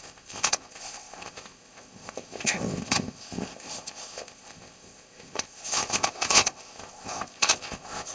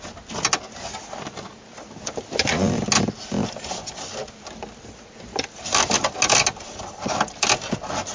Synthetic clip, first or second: first